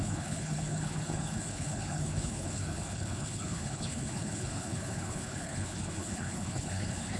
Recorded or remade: remade